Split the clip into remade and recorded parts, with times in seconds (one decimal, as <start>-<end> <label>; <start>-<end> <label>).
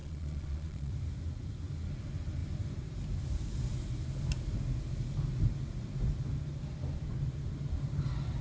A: 0.0-0.9 remade; 0.9-8.4 recorded